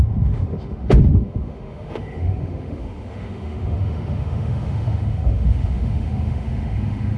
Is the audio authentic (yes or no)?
no